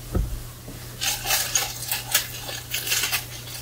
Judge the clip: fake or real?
real